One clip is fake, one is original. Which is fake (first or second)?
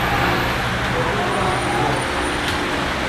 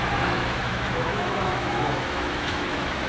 second